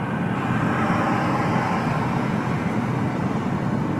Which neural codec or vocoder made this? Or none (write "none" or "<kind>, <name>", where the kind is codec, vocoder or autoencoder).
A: none